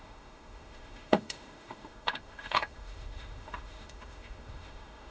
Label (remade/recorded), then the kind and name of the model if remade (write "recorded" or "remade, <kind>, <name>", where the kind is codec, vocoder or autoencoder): remade, autoencoder, DAC-VAE